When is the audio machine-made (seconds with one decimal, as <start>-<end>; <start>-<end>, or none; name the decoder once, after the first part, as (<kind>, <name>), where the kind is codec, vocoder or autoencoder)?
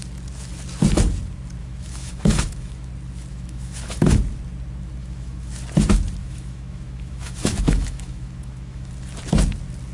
1.6-2.9 (autoencoder, DAC-VAE); 3.3-4.2; 5.0-5.5; 6.2-8.9